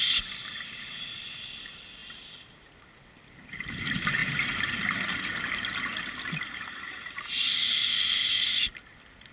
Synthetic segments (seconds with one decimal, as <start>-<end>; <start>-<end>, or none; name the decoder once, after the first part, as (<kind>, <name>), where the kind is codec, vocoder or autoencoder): none